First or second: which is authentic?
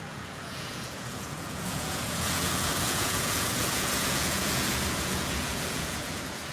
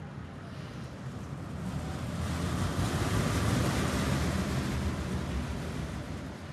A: second